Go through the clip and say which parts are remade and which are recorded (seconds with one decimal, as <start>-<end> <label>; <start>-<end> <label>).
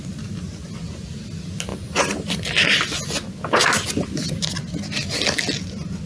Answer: 0.0-6.1 recorded